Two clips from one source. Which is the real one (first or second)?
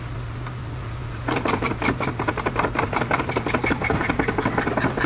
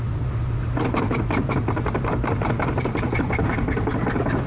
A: first